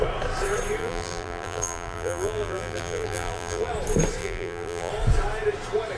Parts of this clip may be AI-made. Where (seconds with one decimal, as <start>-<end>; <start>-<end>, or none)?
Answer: 0.8-3.7; 4.2-4.9